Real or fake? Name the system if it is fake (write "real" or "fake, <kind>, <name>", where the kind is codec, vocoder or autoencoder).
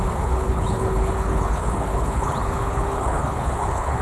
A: fake, codec, HILCodec